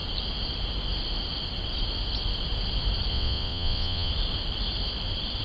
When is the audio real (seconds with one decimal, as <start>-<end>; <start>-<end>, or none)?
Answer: 0.0-3.1; 4.1-5.4